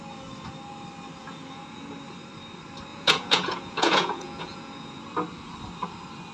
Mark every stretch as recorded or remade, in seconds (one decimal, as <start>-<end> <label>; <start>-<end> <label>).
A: 0.0-1.2 recorded; 1.2-1.9 remade; 1.9-2.9 recorded; 2.9-5.0 remade; 5.0-6.3 recorded